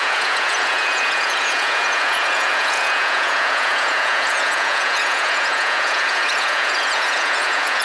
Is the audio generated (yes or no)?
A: yes